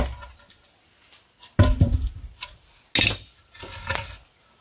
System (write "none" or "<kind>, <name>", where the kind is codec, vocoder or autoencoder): none